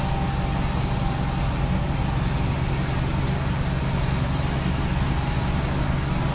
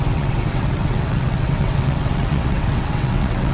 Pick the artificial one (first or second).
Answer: second